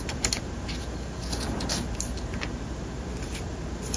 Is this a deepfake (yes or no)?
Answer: no